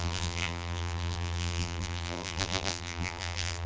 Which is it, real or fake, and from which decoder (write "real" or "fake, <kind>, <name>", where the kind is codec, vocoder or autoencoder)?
fake, vocoder, BigVGAN v2